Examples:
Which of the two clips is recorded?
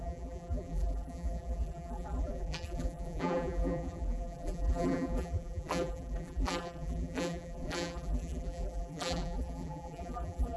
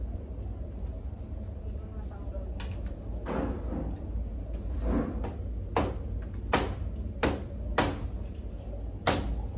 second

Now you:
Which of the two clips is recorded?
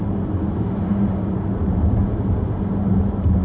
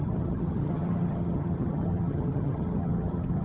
first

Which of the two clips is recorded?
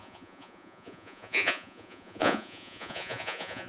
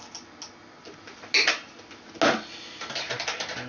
second